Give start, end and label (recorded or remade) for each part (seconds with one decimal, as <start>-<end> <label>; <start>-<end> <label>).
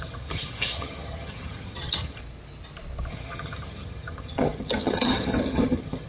0.0-2.2 remade; 2.2-3.1 recorded; 3.1-6.1 remade